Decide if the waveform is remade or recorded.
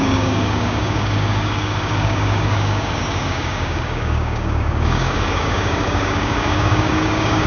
remade